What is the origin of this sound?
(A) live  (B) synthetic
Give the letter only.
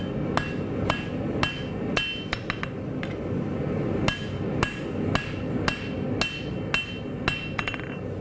A